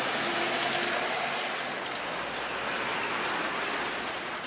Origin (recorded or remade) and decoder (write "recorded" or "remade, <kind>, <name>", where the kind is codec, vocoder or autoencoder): recorded